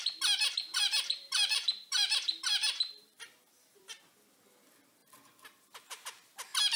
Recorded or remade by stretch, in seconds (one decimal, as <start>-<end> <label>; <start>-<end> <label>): 0.0-0.7 recorded; 0.7-4.0 remade; 4.0-5.0 recorded; 5.0-6.8 remade